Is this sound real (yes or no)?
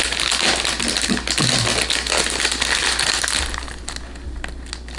yes